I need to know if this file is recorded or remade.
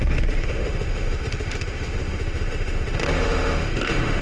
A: remade